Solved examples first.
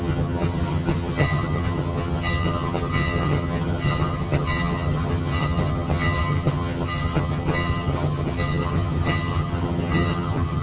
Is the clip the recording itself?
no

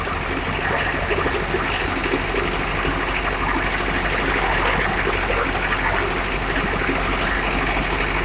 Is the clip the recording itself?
yes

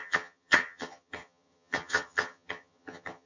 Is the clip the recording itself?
no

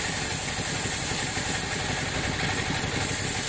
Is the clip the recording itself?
yes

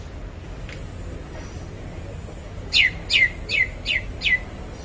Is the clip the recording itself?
yes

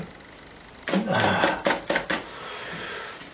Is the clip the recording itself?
yes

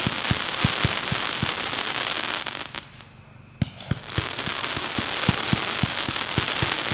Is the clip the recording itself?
yes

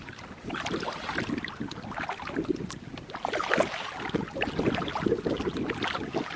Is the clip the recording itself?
yes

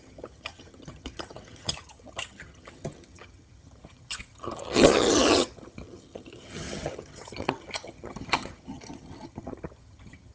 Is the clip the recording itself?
no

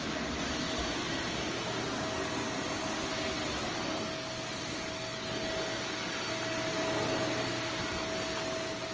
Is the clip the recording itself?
yes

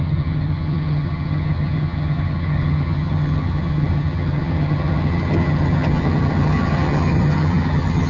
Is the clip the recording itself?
no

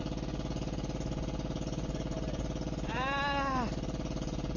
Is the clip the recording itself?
yes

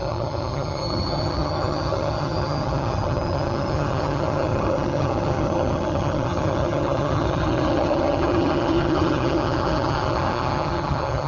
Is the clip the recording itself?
no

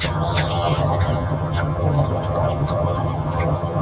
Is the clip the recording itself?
no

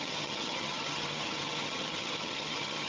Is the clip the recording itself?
no